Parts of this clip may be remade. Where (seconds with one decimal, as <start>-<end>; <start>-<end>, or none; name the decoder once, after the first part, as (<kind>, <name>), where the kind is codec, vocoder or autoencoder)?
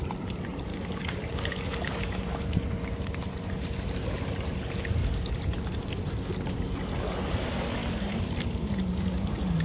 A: 0.7-2.3 (codec, DAC); 7.8-8.3